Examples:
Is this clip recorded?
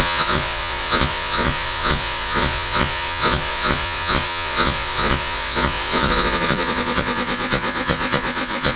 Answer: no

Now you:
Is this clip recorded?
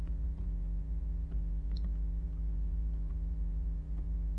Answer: no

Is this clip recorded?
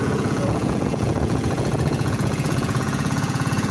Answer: no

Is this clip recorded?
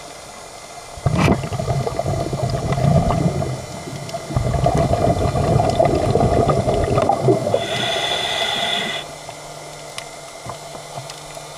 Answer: yes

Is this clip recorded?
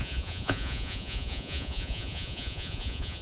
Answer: no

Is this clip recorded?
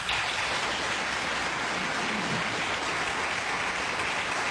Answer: yes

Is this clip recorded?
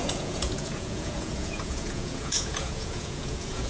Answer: no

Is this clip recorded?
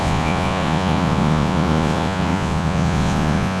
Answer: no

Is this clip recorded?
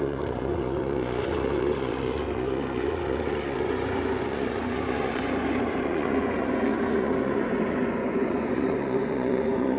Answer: no